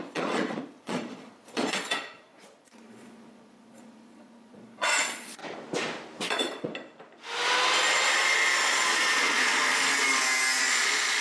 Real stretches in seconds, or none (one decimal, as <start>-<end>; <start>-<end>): 5.4-6.2; 6.7-8.7; 9.5-10.6